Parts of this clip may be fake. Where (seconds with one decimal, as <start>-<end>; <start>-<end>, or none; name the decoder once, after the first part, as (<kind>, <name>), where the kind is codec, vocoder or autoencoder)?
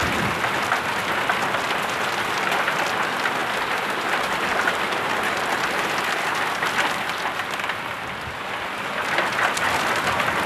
none